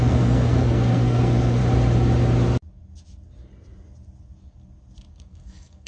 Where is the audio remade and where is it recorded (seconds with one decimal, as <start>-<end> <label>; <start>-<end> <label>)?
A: 0.0-1.6 remade; 1.6-5.1 recorded; 5.1-5.9 remade

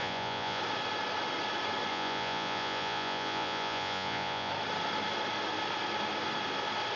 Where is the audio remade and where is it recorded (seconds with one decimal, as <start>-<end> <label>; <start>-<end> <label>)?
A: 0.0-0.6 remade; 0.6-1.9 recorded; 1.9-4.5 remade; 4.5-7.0 recorded

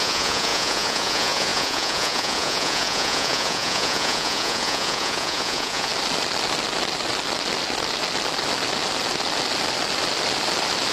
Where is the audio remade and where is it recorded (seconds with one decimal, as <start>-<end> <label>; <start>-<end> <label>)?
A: 0.0-5.9 remade; 5.9-10.9 recorded

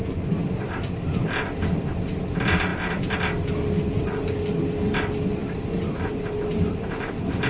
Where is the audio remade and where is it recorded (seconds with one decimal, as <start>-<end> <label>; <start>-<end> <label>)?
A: 0.0-7.5 recorded

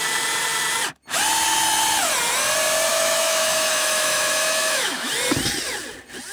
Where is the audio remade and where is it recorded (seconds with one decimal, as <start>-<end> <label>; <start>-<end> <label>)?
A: 0.0-2.9 recorded; 2.9-5.1 remade; 5.1-6.3 recorded